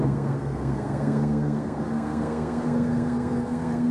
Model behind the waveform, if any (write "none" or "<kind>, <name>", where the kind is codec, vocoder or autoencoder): codec, SNAC